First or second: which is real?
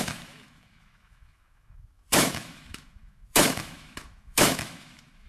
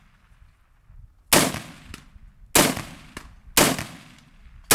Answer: second